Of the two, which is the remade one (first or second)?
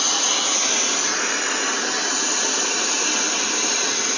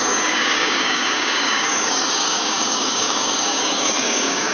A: second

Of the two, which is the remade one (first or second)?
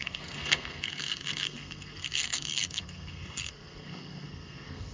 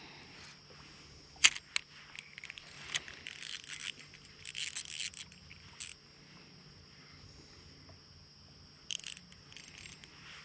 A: first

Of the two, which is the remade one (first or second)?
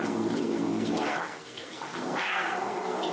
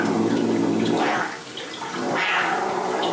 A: first